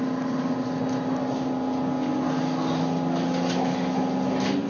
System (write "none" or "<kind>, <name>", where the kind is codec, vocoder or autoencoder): none